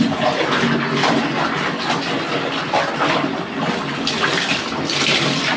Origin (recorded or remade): recorded